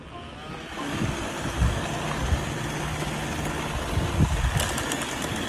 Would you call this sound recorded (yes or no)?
yes